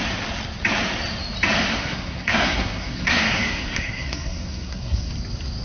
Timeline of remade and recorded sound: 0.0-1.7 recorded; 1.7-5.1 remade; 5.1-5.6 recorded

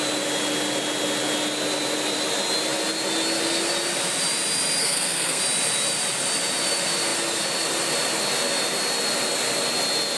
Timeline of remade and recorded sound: 0.0-4.8 recorded; 4.8-5.4 remade; 5.4-10.2 recorded

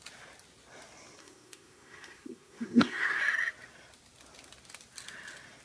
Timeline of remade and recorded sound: 0.0-1.2 recorded; 1.2-3.2 remade; 3.2-5.6 recorded

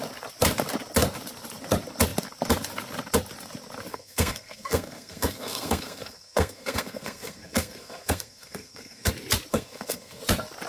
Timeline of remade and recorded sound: 0.0-3.9 recorded; 3.9-9.1 remade; 9.1-9.5 recorded; 9.5-10.2 remade; 10.2-10.7 recorded

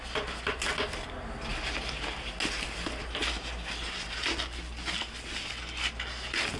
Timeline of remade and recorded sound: 0.0-6.6 recorded

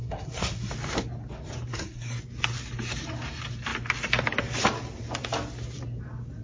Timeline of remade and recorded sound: 0.0-0.7 remade; 0.7-1.7 recorded; 1.7-2.2 remade; 2.2-6.4 recorded

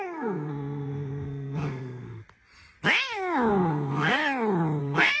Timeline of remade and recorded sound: 0.0-2.2 remade; 2.2-3.5 recorded; 3.5-4.2 remade; 4.2-4.8 recorded; 4.8-5.2 remade

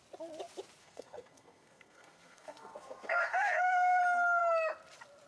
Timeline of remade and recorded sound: 0.0-0.8 recorded; 0.8-4.0 remade; 4.0-5.3 recorded